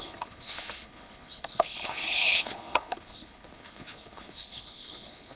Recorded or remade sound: remade